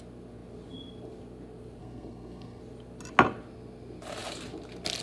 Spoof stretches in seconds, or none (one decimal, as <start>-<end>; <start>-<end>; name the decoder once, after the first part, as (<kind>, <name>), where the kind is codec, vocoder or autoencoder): 1.8-2.6 (codec, SNAC)